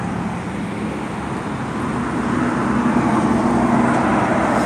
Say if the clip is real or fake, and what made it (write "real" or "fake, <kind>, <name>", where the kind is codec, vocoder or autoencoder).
real